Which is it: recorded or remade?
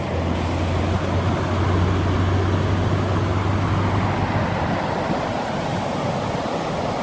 recorded